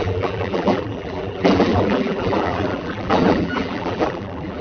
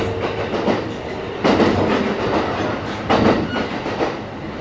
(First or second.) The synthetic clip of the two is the first